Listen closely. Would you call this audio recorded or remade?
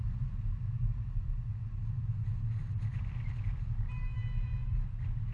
recorded